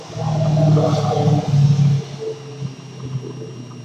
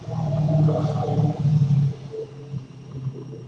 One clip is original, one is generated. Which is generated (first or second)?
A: second